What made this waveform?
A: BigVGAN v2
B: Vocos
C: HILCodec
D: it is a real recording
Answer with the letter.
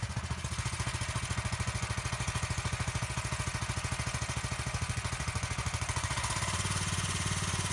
B